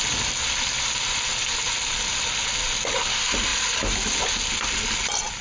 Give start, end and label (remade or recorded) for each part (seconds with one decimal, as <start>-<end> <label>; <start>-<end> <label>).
0.0-5.4 recorded